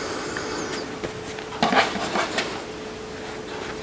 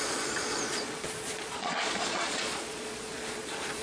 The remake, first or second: second